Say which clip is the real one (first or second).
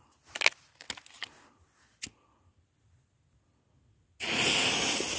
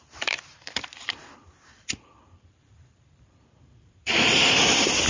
first